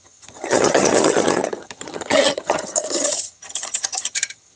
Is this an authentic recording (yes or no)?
no